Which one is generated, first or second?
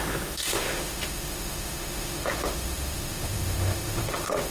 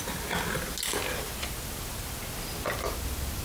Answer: first